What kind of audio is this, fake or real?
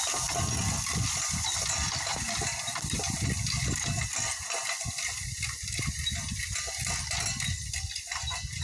real